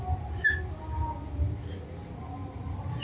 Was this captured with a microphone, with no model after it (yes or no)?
yes